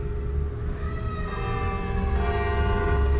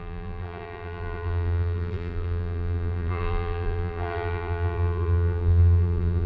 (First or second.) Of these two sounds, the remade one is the second